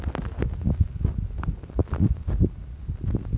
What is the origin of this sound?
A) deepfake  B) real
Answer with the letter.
B